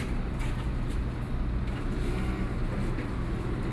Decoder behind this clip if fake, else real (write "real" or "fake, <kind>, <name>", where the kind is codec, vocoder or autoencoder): real